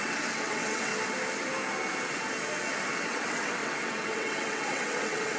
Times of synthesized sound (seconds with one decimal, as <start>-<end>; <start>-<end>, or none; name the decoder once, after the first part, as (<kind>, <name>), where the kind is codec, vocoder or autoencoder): 0.0-0.9 (vocoder, WaveNeXt); 2.9-5.4